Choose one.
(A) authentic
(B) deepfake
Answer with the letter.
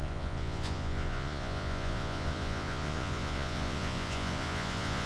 B